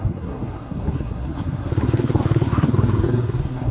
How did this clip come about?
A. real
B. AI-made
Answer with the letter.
B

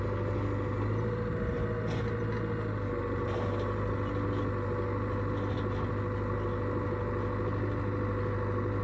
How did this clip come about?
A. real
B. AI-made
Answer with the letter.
A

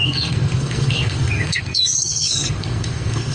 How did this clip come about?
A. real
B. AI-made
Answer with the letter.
B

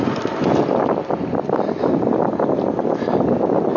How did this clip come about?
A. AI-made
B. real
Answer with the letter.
B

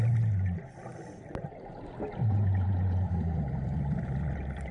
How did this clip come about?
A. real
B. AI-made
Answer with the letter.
A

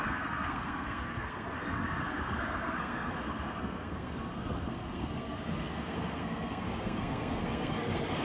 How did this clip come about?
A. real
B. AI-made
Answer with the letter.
B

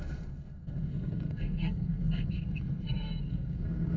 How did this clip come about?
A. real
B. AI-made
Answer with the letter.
B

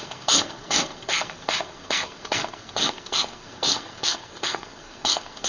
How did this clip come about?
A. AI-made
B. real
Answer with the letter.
A